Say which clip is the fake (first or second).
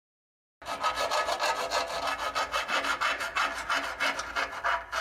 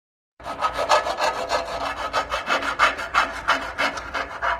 second